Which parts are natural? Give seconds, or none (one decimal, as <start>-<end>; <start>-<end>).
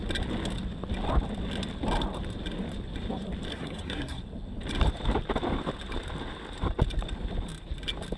0.0-3.5; 4.2-8.2